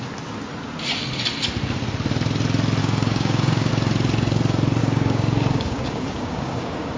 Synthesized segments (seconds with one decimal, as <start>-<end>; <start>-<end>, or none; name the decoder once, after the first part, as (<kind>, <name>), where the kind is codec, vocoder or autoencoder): 2.8-3.7 (codec, DAC); 4.8-7.0